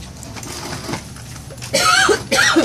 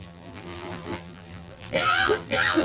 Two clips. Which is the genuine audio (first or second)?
first